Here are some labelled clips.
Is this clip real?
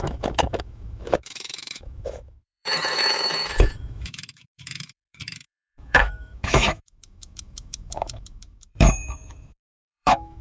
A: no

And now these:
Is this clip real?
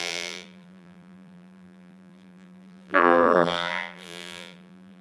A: no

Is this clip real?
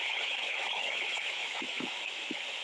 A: no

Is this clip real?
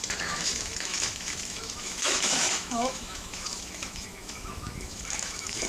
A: no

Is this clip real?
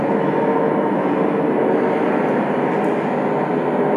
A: yes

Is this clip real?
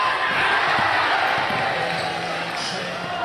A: yes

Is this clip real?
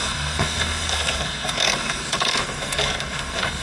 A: no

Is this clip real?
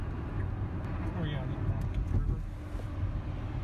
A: yes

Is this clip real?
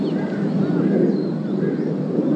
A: yes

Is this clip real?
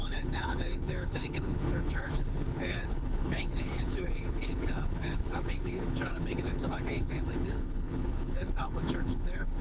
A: no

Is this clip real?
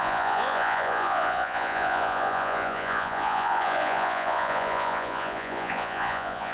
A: no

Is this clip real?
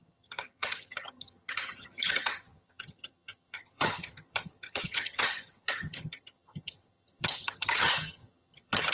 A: no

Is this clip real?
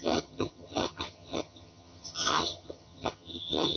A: no